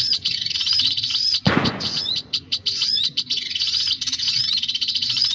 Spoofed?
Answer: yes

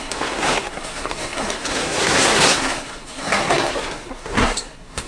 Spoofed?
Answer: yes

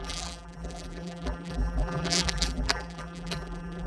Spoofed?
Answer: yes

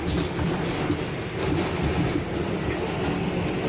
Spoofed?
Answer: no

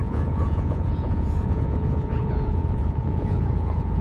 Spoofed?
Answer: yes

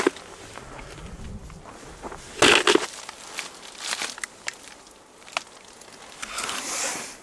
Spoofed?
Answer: no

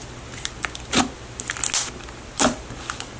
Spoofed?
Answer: no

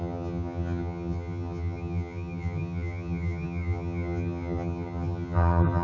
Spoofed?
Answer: yes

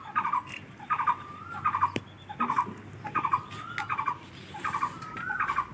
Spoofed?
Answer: no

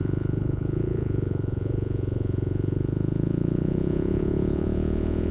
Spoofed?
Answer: yes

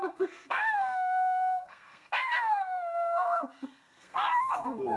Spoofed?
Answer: yes